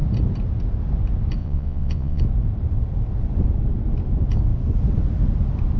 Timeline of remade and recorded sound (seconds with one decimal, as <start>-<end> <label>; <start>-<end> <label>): 0.0-1.4 recorded; 1.4-2.2 remade; 2.2-5.8 recorded